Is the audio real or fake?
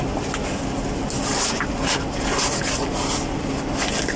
real